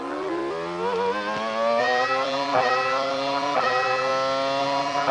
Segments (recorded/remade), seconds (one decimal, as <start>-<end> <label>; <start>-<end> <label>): 0.0-0.4 remade; 0.4-1.8 recorded; 1.8-4.1 remade; 4.1-4.6 recorded; 4.6-5.1 remade